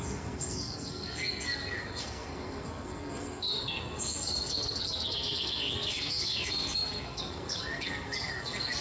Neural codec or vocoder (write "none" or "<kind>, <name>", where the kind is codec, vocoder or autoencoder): codec, SNAC